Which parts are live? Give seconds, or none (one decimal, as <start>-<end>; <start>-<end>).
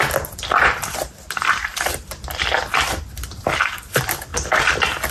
0.0-5.1